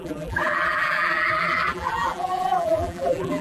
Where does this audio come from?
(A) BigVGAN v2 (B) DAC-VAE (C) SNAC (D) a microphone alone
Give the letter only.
A